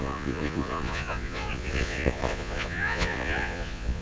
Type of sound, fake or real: fake